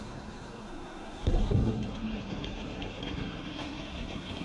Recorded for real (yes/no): no